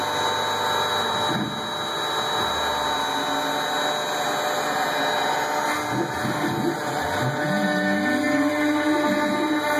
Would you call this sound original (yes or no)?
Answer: yes